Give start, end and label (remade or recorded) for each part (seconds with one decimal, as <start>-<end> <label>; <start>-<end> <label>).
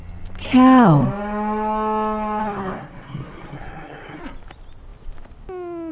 0.0-2.4 recorded; 2.4-4.2 remade; 4.2-5.9 recorded